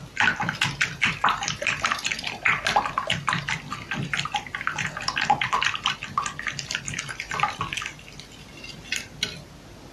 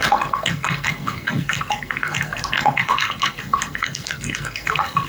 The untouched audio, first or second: first